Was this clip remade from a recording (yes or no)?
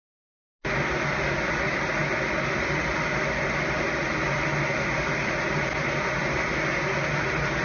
no